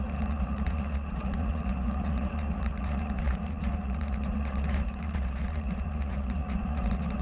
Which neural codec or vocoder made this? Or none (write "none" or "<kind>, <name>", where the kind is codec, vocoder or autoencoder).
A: vocoder, Vocos